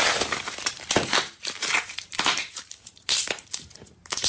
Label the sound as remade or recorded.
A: remade